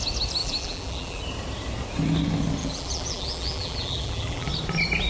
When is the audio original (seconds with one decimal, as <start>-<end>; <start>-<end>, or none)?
0.0-0.4; 1.2-2.6; 4.5-5.1